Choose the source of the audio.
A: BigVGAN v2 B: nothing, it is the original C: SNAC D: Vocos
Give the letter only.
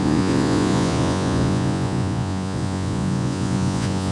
D